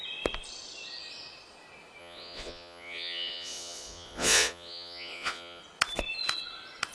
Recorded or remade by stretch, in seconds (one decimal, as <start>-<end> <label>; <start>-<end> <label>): 0.0-2.0 recorded; 2.0-5.6 remade; 5.6-6.9 recorded

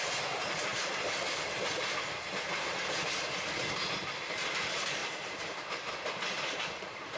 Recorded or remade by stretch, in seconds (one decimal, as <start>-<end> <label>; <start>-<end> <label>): 0.0-7.2 recorded

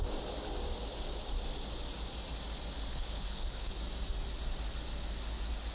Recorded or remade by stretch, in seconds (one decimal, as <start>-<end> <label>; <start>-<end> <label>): 0.0-2.9 recorded; 2.9-3.8 remade; 3.8-5.7 recorded

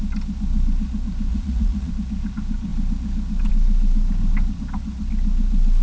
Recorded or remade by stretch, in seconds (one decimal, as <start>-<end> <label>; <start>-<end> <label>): 0.0-1.3 recorded; 1.3-1.9 remade; 1.9-5.8 recorded